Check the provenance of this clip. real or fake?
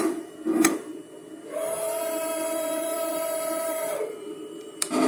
fake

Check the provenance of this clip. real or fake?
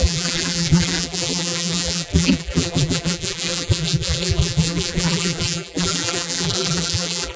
fake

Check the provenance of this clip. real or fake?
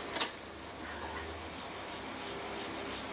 real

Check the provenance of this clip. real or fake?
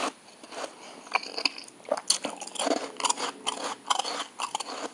real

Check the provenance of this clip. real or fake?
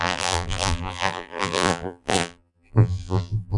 fake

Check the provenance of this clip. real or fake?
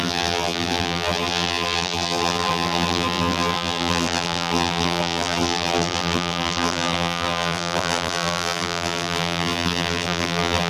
fake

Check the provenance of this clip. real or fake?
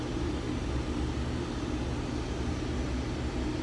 real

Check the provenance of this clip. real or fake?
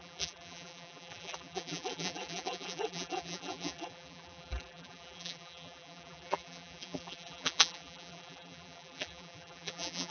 fake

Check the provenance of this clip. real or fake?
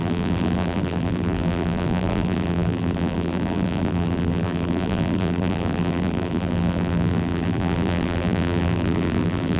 fake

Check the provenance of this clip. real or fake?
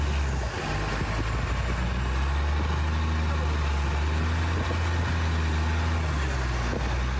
real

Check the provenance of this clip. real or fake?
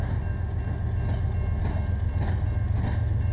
real